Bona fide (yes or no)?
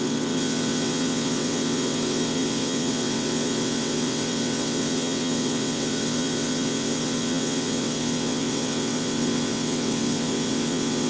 no